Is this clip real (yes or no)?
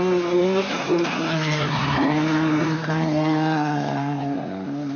no